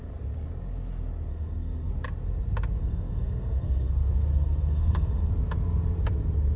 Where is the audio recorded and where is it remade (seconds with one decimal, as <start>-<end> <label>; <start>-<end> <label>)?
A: 0.0-1.3 recorded; 1.3-1.9 remade; 1.9-2.8 recorded; 2.8-5.3 remade; 5.3-6.6 recorded